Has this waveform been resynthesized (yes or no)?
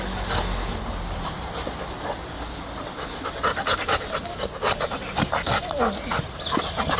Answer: no